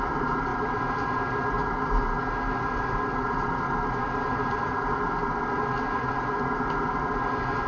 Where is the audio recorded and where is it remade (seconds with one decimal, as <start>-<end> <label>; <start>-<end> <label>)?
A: 0.0-7.7 recorded

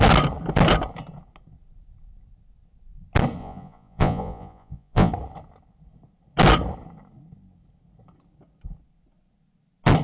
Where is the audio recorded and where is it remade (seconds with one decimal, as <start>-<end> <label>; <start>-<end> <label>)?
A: 0.0-3.4 recorded; 3.4-5.1 remade; 5.1-10.0 recorded

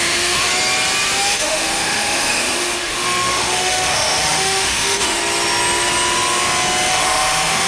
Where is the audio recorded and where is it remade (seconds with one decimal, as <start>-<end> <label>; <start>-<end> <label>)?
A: 0.0-0.5 remade; 0.5-1.2 recorded; 1.2-5.2 remade; 5.2-6.9 recorded; 6.9-7.7 remade